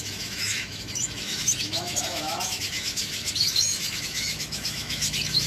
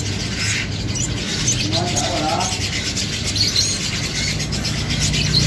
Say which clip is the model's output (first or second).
first